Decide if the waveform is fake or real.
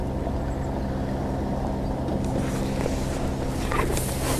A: real